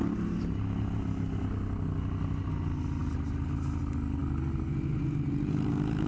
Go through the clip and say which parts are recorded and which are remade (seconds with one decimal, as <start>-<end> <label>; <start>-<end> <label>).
0.0-6.1 recorded